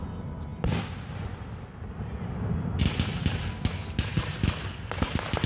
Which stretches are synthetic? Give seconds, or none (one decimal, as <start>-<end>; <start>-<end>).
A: none